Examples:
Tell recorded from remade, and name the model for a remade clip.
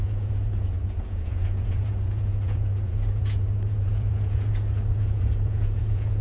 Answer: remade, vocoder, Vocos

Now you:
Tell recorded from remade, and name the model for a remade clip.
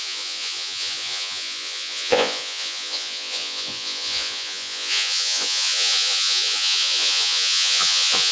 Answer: remade, vocoder, Vocos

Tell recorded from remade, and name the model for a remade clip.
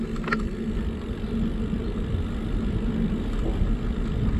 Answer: recorded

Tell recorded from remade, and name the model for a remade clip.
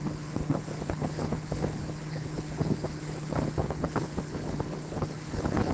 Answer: remade, codec, HILCodec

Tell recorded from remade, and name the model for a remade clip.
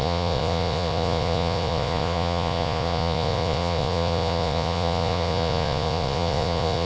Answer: remade, vocoder, Vocos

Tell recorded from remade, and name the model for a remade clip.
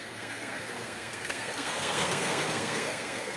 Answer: remade, codec, SNAC